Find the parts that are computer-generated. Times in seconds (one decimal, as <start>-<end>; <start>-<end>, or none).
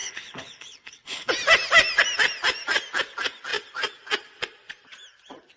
0.0-1.3